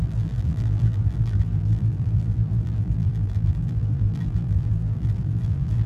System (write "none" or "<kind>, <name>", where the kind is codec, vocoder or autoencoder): vocoder, BigVGAN v2